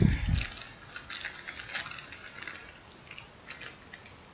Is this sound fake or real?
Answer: real